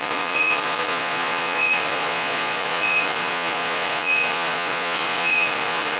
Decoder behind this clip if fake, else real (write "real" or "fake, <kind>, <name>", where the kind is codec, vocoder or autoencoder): fake, vocoder, Vocos